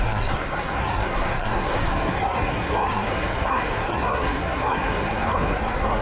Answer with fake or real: fake